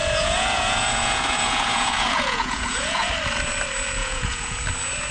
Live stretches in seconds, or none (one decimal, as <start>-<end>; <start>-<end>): 3.1-4.0; 4.6-5.1